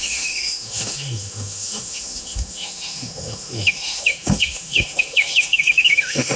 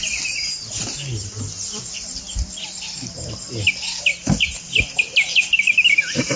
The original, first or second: second